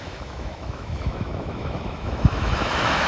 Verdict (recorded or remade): remade